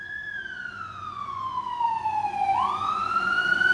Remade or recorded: remade